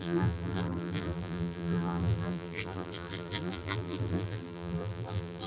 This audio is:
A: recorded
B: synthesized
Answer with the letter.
B